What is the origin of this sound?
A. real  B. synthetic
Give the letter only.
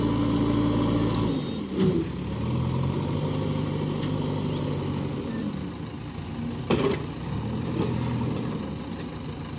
A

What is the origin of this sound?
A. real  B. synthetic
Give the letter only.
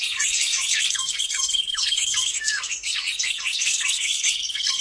B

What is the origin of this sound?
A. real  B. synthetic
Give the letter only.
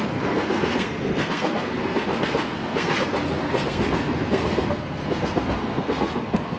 B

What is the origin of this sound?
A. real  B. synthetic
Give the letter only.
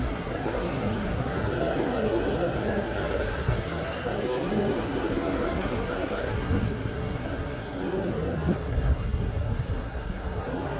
B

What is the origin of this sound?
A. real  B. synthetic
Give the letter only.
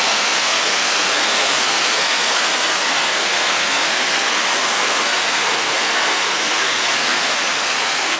B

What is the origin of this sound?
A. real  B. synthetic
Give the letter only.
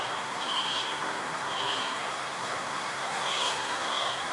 B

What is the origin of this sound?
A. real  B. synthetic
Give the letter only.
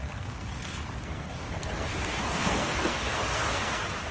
B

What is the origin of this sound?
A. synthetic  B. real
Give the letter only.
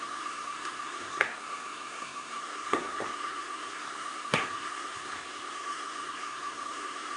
A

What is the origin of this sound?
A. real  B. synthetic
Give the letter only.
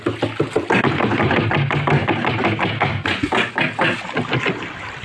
A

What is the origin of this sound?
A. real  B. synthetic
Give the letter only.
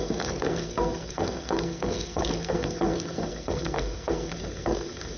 B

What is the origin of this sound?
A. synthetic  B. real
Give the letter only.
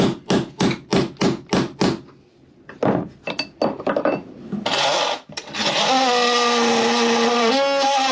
B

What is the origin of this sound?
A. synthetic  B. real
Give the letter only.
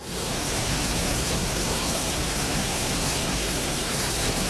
A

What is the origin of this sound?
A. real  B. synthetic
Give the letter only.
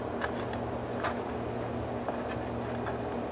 A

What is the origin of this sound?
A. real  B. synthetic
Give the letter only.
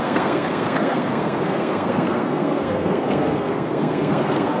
B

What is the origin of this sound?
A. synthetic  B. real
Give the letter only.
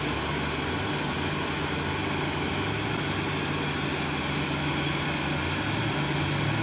B